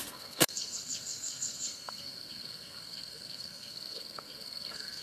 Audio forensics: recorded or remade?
remade